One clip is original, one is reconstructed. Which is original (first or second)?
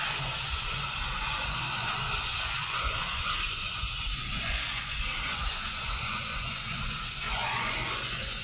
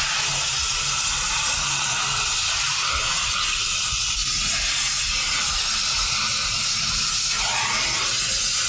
second